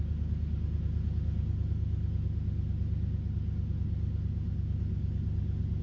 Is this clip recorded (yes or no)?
yes